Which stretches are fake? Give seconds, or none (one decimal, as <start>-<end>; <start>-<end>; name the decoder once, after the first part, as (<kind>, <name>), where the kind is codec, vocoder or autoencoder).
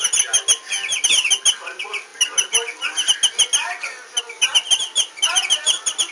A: none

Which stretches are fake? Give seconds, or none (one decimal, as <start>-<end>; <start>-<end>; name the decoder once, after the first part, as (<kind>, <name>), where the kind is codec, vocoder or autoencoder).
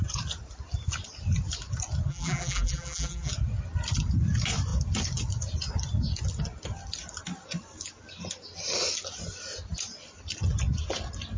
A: 2.1-3.3 (vocoder, BigVGAN v2)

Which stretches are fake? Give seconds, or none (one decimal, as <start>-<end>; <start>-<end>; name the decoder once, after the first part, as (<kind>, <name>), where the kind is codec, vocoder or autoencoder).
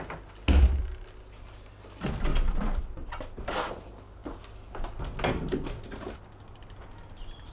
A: 2.3-2.8 (vocoder, BigVGAN v2)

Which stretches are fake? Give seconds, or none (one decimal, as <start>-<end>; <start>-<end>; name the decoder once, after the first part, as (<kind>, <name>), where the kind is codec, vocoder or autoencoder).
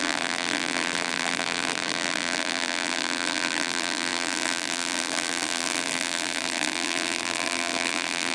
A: 0.0-8.3 (vocoder, BigVGAN v2)